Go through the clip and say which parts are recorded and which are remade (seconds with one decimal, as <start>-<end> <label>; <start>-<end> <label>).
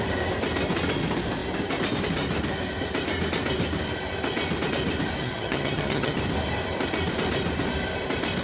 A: 0.0-5.2 recorded; 5.2-6.2 remade; 6.2-8.4 recorded